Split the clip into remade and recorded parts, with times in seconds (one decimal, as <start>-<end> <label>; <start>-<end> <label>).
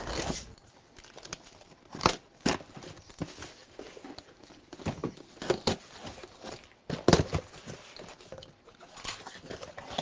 0.0-10.0 recorded